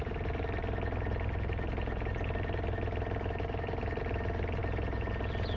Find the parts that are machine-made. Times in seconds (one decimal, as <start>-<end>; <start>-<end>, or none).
none